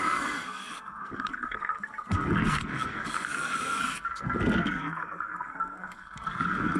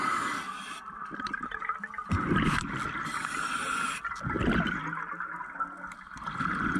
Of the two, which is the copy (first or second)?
first